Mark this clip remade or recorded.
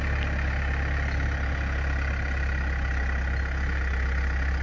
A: recorded